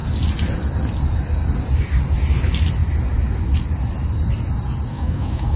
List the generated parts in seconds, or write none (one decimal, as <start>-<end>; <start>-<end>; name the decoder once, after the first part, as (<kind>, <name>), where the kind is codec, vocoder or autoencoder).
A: 4.9-5.6 (autoencoder, DAC-VAE)

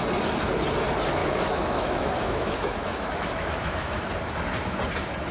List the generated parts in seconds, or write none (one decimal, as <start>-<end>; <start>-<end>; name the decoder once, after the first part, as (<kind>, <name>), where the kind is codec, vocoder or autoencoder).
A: 1.2-4.1 (autoencoder, DAC-VAE)

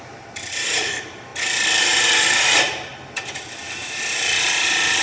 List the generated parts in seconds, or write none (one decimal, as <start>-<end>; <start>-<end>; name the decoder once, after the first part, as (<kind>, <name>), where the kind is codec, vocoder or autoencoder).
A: 0.0-1.3 (vocoder, BigVGAN v2); 1.8-2.9; 4.1-5.0

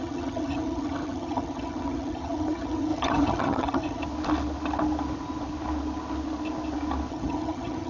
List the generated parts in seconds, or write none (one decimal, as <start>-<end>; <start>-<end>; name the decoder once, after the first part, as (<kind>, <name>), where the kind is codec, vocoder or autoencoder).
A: 0.0-4.0 (vocoder, HiFi-GAN); 7.1-7.9

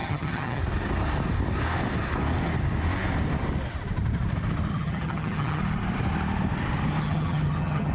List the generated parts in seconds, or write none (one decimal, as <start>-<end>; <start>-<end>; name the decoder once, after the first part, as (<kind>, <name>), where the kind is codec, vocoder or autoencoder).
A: 0.0-0.6 (vocoder, HiFi-GAN); 4.7-5.6; 7.0-7.9